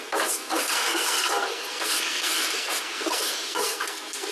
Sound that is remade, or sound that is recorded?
remade